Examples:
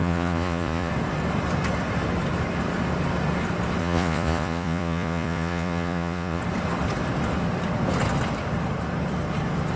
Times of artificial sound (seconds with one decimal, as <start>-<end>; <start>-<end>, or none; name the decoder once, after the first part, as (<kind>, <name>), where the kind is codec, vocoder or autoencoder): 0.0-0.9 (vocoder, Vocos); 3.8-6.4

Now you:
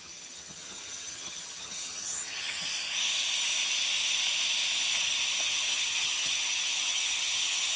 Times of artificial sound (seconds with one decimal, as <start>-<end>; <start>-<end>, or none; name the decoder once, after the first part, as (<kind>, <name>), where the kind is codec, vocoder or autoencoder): 0.0-2.7 (vocoder, HiFi-GAN); 5.4-7.8

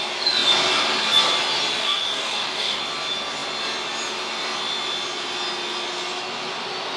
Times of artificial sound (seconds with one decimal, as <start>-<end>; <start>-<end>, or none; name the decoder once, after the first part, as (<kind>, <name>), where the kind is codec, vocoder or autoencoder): 1.8-2.8 (codec, DAC)

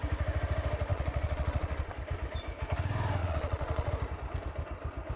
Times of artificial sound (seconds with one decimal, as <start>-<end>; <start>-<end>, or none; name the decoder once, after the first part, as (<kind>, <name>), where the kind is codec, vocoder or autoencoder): 0.9-1.9 (vocoder, Vocos); 3.2-3.9

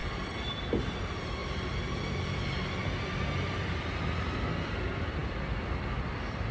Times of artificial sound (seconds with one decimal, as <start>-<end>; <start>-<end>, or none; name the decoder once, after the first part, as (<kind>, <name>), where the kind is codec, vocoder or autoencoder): none

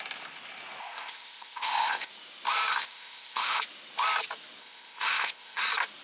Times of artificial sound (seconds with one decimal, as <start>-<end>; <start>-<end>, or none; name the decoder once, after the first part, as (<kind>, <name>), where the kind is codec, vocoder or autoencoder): 0.8-2.1 (codec, ZipCodec); 2.7-3.6; 4.6-5.6

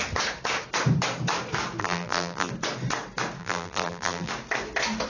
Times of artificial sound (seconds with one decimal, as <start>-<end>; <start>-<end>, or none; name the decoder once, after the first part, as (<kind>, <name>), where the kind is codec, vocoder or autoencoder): 1.8-2.5 (vocoder, BigVGAN v2); 3.4-4.3

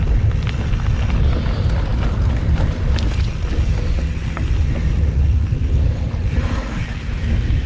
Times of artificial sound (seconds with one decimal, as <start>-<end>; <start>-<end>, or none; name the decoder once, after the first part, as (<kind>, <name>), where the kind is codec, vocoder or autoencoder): none